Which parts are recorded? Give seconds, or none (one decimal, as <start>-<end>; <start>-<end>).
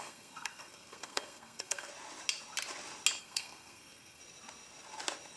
1.9-3.2; 4.2-5.4